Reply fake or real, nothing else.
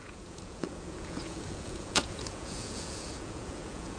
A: fake